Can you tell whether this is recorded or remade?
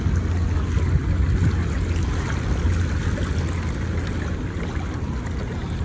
recorded